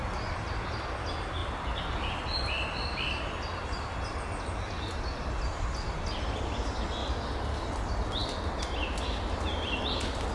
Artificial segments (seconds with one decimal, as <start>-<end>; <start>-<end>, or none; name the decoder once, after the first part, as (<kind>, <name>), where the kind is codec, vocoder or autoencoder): 7.0-7.7 (vocoder, BigVGAN v2)